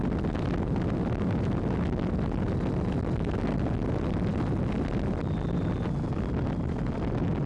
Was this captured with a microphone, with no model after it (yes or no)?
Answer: yes